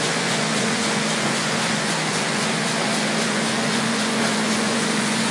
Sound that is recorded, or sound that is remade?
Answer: remade